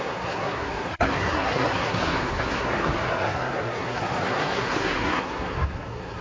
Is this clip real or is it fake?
fake